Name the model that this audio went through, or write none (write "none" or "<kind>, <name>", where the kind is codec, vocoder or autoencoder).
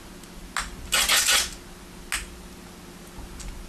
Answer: none